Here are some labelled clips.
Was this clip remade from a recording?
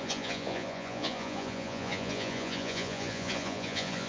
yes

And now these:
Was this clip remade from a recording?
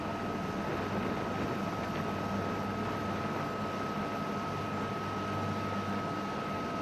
no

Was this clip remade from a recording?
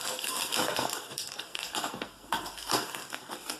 yes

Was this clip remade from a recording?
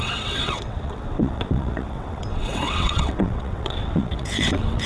yes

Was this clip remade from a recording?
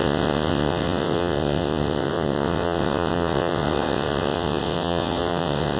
yes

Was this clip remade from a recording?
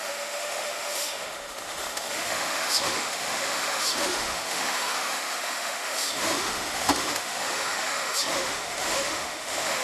yes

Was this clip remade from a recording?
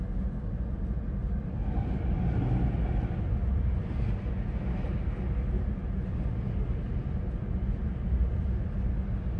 no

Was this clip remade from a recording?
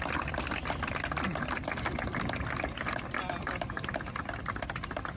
no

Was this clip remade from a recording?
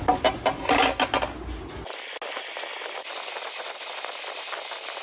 no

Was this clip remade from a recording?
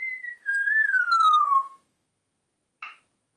yes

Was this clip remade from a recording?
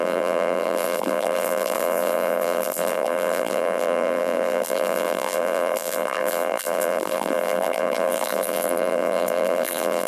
yes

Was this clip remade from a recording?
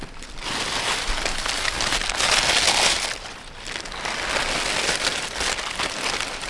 no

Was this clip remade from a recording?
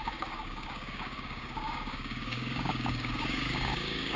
yes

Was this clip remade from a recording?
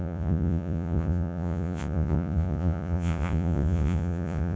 yes